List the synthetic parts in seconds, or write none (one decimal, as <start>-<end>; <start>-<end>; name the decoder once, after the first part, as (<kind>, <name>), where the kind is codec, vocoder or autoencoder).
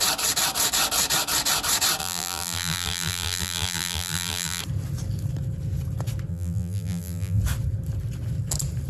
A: 2.0-4.6 (vocoder, BigVGAN v2); 6.3-7.4